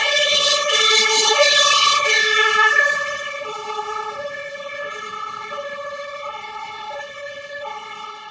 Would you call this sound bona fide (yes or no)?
no